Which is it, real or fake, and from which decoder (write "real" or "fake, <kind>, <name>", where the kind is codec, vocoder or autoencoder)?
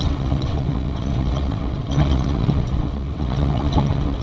fake, vocoder, WaveNeXt